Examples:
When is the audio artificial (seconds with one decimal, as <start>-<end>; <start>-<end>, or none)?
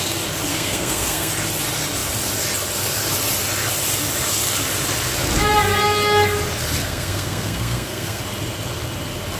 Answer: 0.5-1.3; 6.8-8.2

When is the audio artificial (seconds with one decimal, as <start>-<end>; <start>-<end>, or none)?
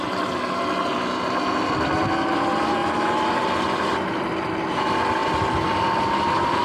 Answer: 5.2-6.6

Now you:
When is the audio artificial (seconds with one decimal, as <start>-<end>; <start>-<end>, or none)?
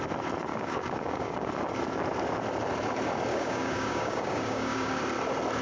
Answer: 0.5-1.5; 3.3-5.0